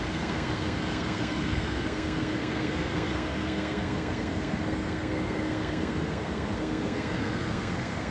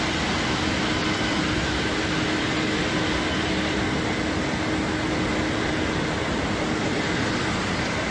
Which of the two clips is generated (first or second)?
first